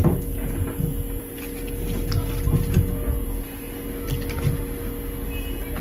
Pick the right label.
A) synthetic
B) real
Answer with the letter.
B